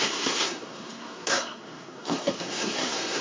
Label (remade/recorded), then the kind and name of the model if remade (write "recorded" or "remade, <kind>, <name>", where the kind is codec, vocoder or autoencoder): remade, codec, SNAC